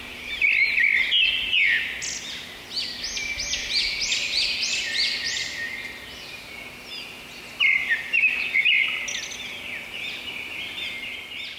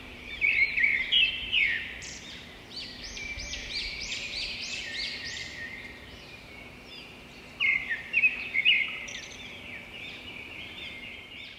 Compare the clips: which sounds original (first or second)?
first